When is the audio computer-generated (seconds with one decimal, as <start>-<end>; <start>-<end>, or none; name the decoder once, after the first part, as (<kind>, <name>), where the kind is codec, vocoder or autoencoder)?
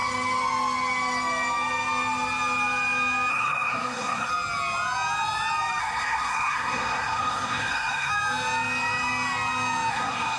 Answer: 3.3-4.3 (codec, SNAC); 5.8-8.1; 9.9-10.4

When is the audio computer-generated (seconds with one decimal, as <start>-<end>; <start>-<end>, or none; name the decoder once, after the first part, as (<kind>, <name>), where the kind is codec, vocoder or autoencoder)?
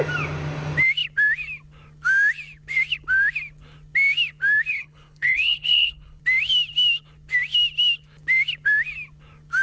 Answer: 4.7-6.2 (codec, HILCodec)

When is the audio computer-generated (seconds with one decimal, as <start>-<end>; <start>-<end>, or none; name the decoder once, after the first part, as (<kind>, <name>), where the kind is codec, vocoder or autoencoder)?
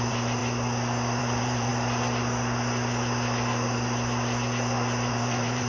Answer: 0.0-0.4 (vocoder, BigVGAN v2); 1.2-1.7; 5.1-5.7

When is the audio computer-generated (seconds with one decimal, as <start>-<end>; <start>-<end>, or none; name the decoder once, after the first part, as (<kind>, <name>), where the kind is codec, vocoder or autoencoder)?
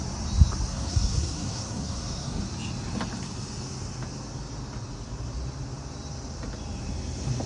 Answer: 0.7-2.4 (codec, SNAC)